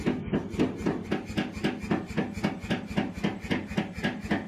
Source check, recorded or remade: recorded